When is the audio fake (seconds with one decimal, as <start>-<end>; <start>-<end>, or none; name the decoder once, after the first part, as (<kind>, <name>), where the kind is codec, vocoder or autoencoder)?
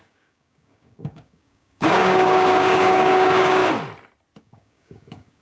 0.0-3.6 (codec, DAC); 4.4-5.4